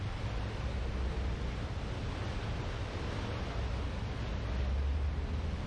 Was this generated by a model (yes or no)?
no